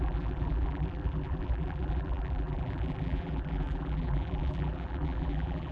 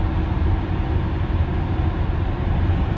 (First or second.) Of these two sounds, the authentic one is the second